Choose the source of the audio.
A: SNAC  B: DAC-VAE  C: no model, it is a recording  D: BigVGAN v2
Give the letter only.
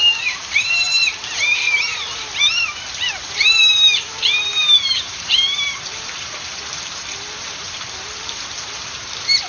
D